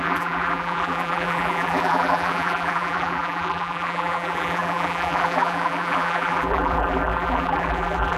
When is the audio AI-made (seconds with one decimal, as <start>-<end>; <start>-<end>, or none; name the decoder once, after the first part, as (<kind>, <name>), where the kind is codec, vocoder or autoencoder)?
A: 0.0-8.2 (vocoder, BigVGAN v2)

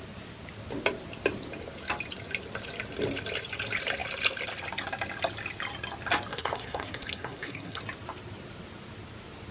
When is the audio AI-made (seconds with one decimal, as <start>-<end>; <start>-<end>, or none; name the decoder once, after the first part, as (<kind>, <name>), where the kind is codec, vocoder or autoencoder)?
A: 6.3-7.8 (codec, SNAC)

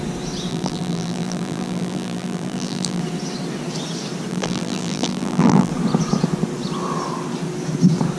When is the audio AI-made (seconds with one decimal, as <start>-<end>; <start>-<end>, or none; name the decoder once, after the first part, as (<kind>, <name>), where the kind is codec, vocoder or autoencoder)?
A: 0.5-3.0 (vocoder, BigVGAN v2); 4.3-5.7

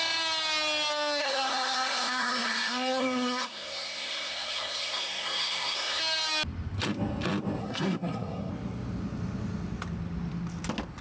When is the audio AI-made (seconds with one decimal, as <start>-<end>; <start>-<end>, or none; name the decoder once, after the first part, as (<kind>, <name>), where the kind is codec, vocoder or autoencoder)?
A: 1.2-6.0 (codec, SNAC); 7.6-8.5

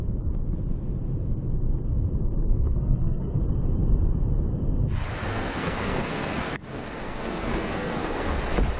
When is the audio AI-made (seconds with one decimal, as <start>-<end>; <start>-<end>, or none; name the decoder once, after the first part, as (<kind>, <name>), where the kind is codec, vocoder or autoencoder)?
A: 2.4-3.4 (codec, SNAC); 5.2-8.4

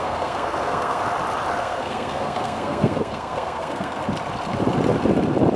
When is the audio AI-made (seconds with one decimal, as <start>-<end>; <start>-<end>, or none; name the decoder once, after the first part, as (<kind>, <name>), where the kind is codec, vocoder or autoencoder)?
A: 0.0-1.0 (codec, SNAC); 1.6-4.0